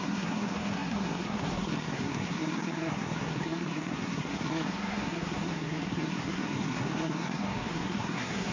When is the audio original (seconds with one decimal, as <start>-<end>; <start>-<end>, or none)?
none